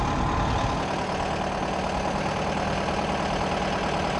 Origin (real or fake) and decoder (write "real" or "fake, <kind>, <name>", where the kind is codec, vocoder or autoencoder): real